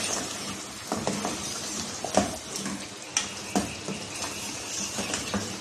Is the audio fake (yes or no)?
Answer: no